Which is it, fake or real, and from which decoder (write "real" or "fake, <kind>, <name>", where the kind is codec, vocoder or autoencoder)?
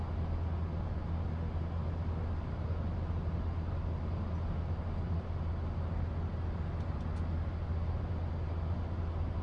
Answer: real